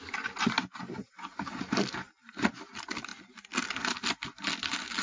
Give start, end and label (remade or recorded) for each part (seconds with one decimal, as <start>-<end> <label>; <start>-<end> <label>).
0.0-1.0 recorded; 1.0-1.6 remade; 1.6-5.0 recorded